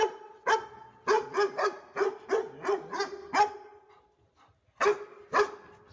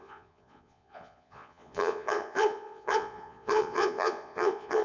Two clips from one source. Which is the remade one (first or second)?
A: second